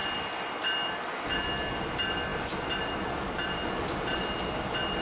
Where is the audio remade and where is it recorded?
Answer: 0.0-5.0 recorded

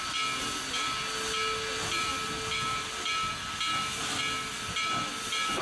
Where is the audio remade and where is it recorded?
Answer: 0.0-5.6 recorded

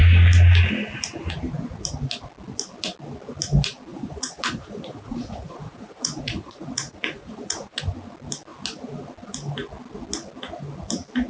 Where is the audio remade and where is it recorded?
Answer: 0.0-3.9 recorded; 3.9-7.8 remade; 7.8-11.3 recorded

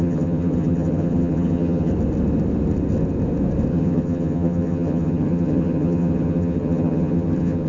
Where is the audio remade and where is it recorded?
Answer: 0.0-1.9 remade; 1.9-3.7 recorded; 3.7-7.7 remade

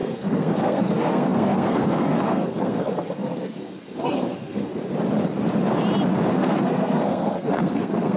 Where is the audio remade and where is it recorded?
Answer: 0.0-4.7 remade; 4.7-6.3 recorded; 6.3-8.2 remade

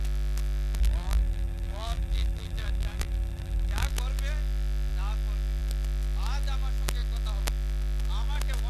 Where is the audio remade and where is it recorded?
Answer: 0.0-0.8 recorded; 0.8-3.9 remade; 3.9-8.7 recorded

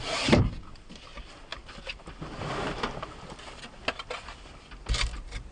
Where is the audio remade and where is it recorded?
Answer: 0.0-5.5 recorded

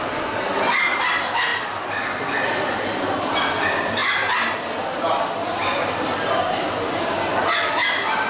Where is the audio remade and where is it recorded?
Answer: 0.0-8.3 recorded